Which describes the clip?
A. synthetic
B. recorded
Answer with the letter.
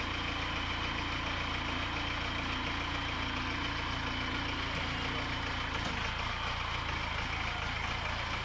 B